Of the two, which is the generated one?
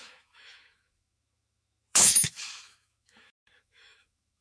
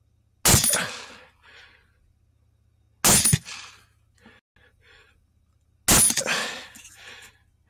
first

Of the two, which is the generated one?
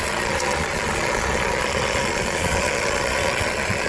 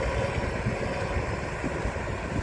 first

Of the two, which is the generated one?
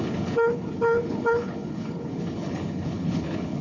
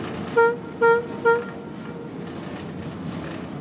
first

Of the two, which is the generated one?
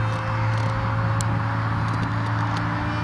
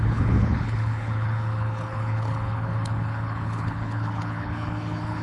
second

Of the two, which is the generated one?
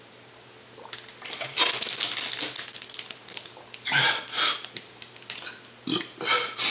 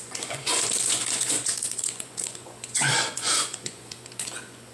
second